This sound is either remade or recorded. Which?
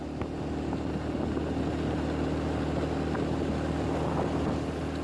recorded